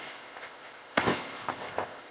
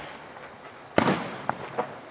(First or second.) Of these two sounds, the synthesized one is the first